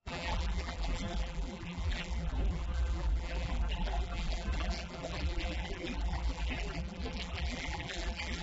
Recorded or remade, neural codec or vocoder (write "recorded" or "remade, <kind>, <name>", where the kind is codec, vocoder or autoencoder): remade, vocoder, BigVGAN v2